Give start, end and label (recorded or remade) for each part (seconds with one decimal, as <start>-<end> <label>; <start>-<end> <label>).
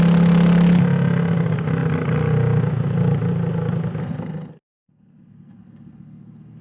0.0-4.0 recorded; 4.0-6.6 remade